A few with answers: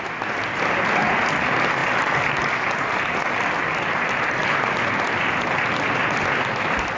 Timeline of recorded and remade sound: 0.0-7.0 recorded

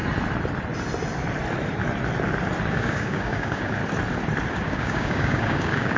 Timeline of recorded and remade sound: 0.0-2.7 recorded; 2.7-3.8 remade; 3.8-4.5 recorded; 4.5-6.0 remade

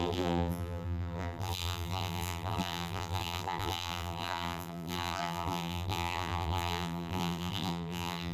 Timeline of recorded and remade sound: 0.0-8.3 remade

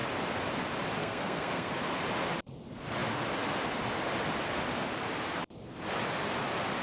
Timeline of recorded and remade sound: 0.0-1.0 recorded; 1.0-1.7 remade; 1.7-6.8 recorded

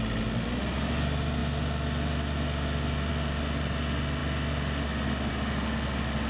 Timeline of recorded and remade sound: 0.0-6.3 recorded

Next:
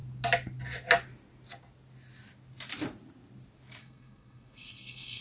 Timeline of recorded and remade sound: 0.0-3.8 recorded; 3.8-5.2 remade